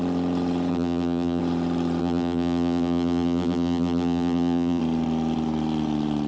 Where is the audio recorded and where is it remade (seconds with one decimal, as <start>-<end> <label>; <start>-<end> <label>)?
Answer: 0.0-0.7 recorded; 0.7-1.4 remade; 1.4-2.0 recorded; 2.0-4.8 remade; 4.8-6.3 recorded